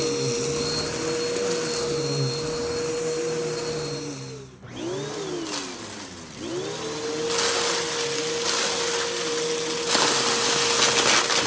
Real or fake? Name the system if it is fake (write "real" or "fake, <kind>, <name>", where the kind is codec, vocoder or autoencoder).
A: real